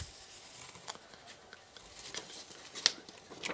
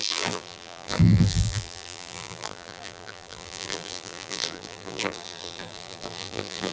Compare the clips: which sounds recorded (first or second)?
first